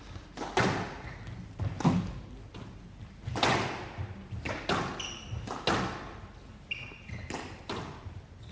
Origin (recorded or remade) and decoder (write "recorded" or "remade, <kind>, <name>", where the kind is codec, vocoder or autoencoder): recorded